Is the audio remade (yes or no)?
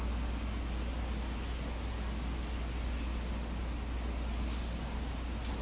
no